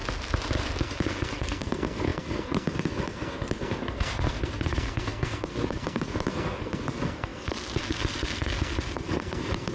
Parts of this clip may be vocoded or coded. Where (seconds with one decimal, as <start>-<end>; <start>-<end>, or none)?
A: 0.8-9.7